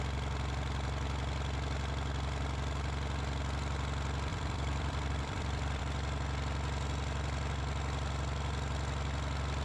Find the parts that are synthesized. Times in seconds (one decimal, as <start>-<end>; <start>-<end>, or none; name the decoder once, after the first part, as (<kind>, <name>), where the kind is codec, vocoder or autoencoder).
4.3-5.8 (vocoder, BigVGAN v2)